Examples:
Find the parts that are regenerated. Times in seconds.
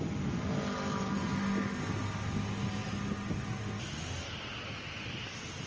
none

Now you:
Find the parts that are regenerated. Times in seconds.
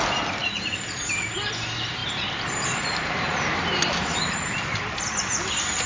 0.4-1.5 (vocoder, BigVGAN v2); 2.0-5.5